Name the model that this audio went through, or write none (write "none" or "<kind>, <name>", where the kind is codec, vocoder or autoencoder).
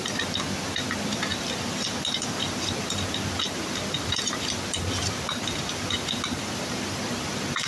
none